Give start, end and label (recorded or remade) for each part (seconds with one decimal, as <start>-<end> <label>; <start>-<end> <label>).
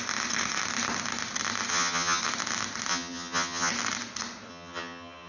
0.0-1.7 recorded; 1.7-2.2 remade; 2.2-2.9 recorded; 2.9-3.7 remade; 3.7-4.5 recorded; 4.5-5.3 remade